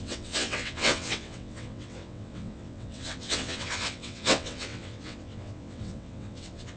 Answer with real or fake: fake